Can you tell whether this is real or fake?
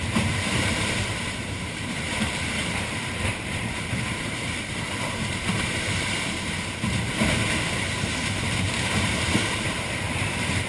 fake